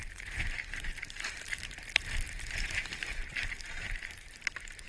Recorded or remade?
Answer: remade